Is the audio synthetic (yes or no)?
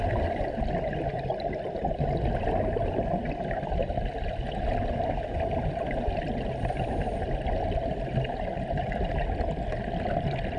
no